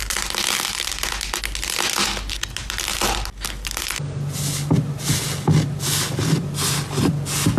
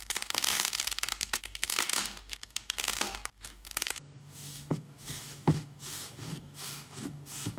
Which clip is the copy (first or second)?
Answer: second